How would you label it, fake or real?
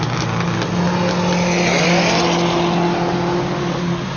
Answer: real